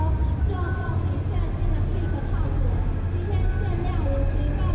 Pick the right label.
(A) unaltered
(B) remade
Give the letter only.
A